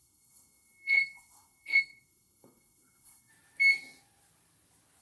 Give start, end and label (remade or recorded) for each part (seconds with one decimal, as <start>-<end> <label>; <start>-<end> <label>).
0.0-3.3 remade; 3.3-5.0 recorded